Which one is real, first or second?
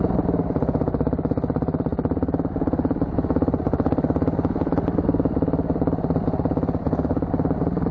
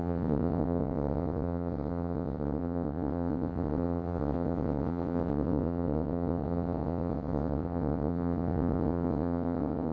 first